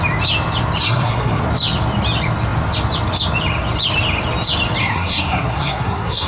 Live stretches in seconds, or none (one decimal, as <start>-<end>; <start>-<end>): 0.0-0.8; 1.4-4.8